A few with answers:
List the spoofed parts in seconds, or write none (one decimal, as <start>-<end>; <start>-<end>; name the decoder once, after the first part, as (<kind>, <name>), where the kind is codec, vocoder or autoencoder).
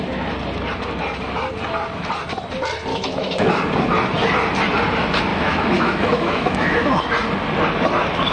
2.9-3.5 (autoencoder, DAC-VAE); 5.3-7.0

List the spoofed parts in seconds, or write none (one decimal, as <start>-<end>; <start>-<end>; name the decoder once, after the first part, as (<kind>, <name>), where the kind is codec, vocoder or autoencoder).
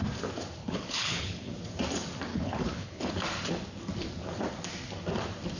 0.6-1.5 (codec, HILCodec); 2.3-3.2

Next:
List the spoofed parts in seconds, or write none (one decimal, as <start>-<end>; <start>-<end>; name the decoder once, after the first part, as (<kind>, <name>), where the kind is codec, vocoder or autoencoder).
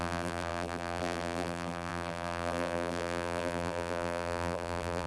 0.0-5.1 (vocoder, BigVGAN v2)